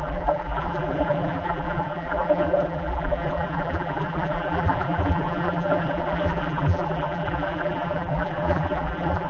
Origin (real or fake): fake